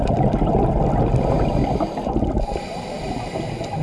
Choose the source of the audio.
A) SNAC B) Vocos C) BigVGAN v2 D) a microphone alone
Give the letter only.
D